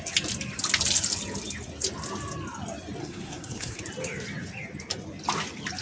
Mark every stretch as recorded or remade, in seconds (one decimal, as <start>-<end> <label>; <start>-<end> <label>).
0.0-3.0 recorded; 3.0-3.8 remade; 3.8-5.8 recorded